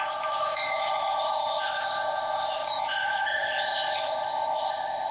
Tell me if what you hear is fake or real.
fake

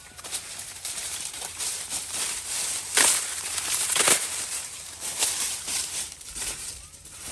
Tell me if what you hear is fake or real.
fake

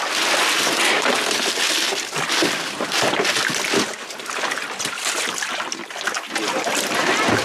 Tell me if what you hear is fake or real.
real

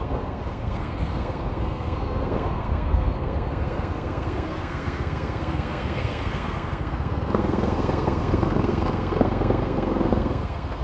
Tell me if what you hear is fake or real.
fake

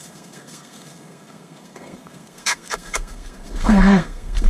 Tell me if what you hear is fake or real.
fake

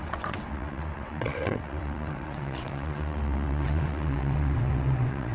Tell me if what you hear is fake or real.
fake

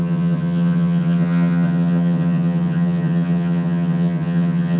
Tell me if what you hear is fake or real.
fake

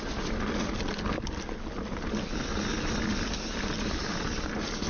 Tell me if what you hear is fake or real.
real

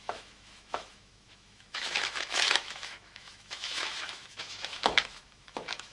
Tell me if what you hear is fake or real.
fake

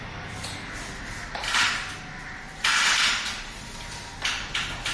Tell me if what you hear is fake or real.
real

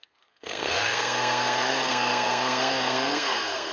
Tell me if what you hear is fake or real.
fake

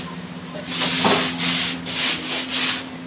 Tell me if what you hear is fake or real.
real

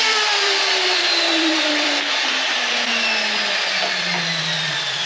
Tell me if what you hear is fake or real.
fake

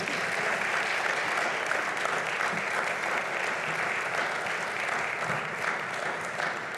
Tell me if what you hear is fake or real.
real